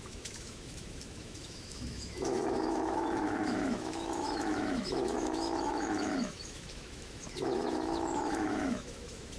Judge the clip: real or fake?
fake